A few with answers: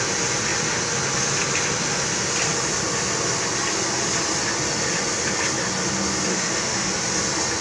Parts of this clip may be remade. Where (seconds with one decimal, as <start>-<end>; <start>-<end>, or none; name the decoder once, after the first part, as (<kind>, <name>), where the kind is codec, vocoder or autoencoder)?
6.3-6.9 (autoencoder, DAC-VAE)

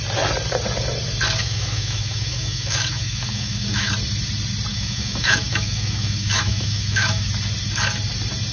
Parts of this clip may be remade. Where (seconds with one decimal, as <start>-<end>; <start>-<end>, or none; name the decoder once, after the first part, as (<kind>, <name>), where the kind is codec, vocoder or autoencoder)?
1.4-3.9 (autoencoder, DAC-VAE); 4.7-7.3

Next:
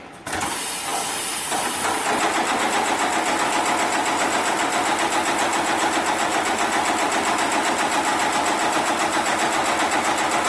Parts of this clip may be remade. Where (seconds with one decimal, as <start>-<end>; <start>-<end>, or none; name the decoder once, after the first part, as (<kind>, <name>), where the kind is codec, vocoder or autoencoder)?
none

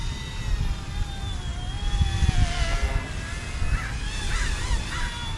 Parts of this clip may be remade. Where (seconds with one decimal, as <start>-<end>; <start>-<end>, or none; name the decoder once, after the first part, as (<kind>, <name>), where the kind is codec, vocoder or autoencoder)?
none

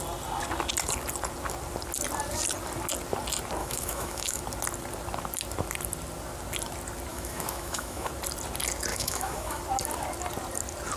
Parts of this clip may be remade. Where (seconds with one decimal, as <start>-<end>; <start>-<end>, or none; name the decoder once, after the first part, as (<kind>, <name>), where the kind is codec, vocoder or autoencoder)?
3.6-4.4 (autoencoder, DAC-VAE); 7.1-8.1; 8.9-9.6

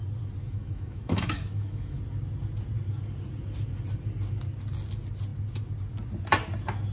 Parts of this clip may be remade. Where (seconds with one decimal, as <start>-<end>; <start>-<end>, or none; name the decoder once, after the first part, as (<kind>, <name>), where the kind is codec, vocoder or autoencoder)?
0.4-2.0 (autoencoder, DAC-VAE)

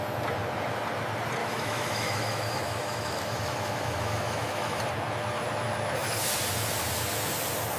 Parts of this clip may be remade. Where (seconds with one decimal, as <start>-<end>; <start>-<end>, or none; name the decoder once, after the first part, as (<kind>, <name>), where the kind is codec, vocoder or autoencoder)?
1.4-4.8 (autoencoder, DAC-VAE)